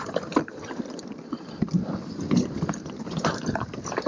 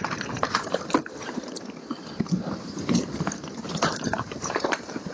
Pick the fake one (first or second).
second